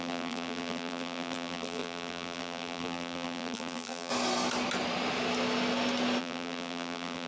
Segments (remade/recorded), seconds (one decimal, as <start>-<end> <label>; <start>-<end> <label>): 0.0-4.1 remade; 4.1-6.2 recorded; 6.2-7.3 remade